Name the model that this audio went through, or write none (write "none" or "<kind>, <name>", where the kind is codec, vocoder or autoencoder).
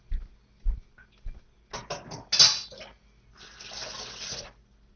none